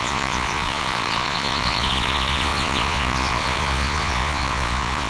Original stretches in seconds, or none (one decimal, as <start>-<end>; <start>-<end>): none